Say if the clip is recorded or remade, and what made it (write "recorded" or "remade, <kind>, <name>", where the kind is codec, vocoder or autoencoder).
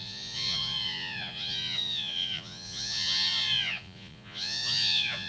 remade, vocoder, Vocos